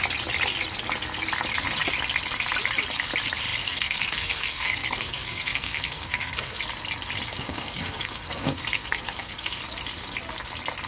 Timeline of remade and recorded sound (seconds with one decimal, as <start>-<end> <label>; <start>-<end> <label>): 0.0-3.6 recorded; 3.6-6.6 remade; 6.6-7.3 recorded; 7.3-9.6 remade; 9.6-10.9 recorded